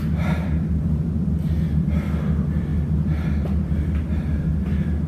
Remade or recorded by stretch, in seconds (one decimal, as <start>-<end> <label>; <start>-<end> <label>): 0.0-5.1 recorded